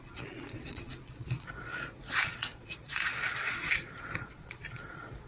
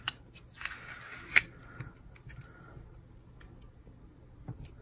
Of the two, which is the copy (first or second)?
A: first